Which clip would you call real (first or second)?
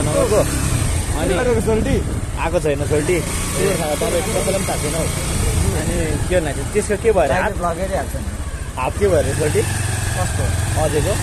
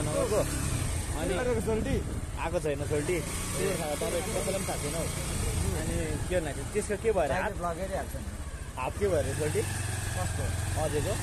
second